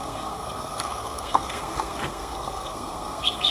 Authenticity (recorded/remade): remade